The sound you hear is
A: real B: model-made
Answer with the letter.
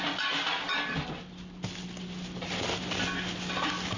A